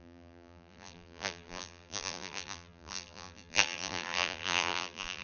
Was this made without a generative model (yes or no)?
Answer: no